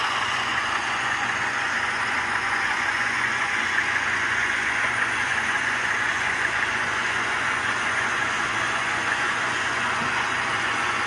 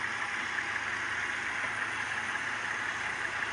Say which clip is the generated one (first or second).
first